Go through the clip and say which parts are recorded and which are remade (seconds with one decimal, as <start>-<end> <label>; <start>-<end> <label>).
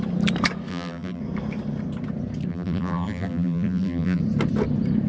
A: 0.0-0.7 recorded; 0.7-1.2 remade; 1.2-2.5 recorded; 2.5-4.2 remade; 4.2-5.1 recorded